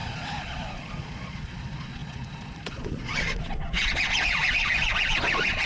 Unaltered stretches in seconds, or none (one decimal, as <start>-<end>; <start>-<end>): none